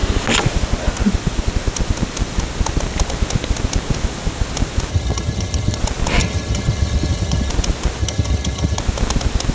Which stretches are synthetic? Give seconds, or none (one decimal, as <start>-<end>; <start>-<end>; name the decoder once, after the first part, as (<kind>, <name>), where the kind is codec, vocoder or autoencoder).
4.9-5.8 (vocoder, HiFi-GAN); 6.2-7.5; 8.0-8.8